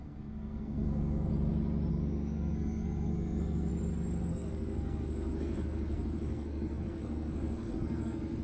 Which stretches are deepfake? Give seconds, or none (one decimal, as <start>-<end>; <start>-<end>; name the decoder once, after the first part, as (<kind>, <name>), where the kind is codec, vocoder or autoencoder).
0.0-1.3 (codec, SNAC); 1.9-3.7; 4.3-8.4